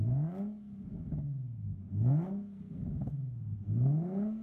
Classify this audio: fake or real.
fake